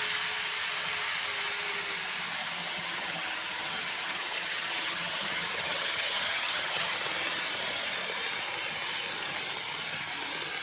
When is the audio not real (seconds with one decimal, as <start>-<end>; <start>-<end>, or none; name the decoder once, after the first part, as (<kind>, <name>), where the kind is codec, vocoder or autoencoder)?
2.6-6.9 (vocoder, HiFi-GAN)